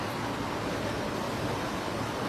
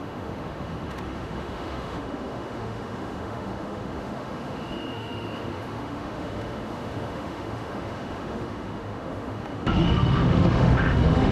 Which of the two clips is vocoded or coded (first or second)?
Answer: second